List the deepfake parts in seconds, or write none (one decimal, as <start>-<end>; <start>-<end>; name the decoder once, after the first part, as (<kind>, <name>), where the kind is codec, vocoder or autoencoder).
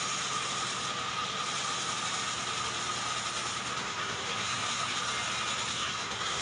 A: 3.8-5.0 (codec, SNAC); 5.7-6.4